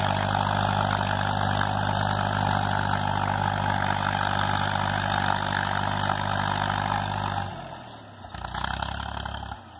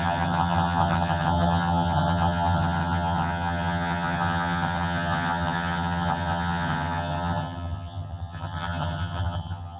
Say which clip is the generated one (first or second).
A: second